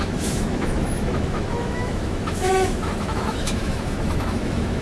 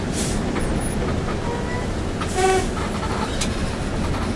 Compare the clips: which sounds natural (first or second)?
second